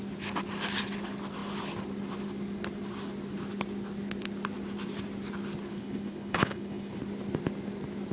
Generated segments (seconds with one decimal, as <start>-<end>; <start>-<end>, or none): 5.7-7.0